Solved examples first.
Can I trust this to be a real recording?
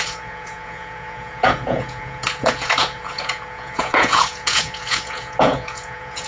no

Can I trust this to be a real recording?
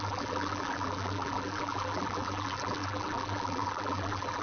no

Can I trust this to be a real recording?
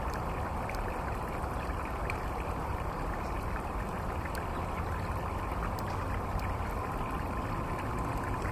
no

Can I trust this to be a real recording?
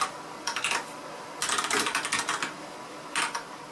yes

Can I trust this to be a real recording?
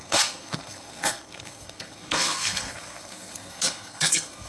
no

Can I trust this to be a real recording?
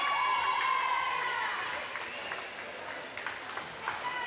yes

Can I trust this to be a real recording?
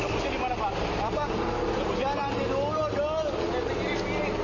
yes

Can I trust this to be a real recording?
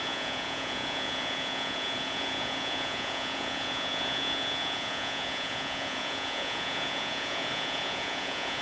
no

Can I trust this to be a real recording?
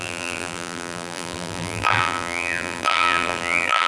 no